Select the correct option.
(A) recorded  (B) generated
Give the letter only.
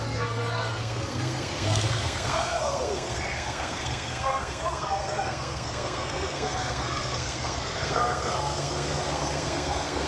B